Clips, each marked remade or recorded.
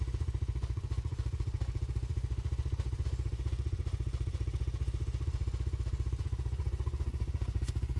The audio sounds remade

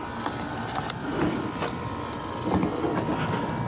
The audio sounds recorded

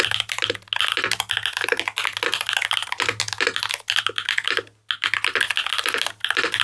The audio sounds recorded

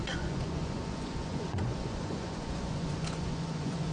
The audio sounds remade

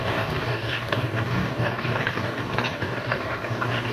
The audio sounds remade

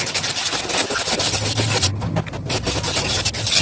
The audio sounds recorded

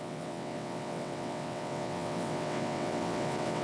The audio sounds remade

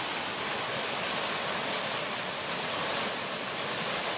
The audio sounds recorded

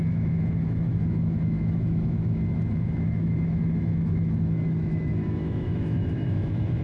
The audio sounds remade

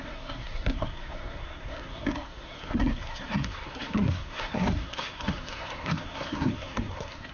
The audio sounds remade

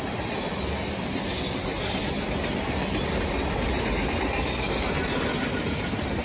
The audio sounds recorded